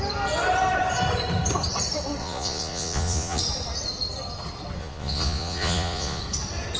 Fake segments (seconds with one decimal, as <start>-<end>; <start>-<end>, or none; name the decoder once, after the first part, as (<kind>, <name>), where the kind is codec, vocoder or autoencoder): 2.2-3.4 (vocoder, Vocos); 4.8-6.2